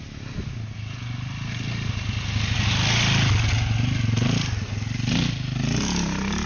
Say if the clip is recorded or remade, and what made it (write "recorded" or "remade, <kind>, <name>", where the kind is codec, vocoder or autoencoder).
recorded